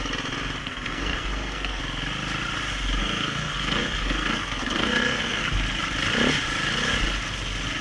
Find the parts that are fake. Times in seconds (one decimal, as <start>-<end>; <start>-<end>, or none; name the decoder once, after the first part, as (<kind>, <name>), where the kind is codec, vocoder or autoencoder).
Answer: 0.6-1.8 (codec, SNAC); 3.0-5.5